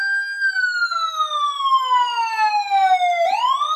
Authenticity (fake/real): real